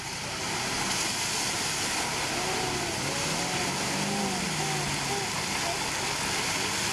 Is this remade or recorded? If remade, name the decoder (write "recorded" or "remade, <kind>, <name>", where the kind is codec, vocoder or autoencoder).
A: recorded